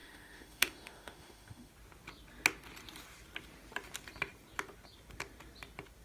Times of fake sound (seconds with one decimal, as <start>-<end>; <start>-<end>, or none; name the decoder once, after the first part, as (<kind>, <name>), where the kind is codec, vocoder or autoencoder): 0.0-1.7 (autoencoder, DAC-VAE)